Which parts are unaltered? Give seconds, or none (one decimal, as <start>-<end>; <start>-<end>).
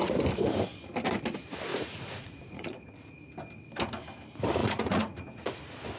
0.0-1.7; 2.9-4.6; 5.6-6.0